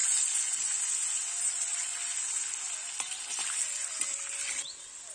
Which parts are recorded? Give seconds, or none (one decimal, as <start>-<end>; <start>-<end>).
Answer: 0.0-1.4; 1.9-5.1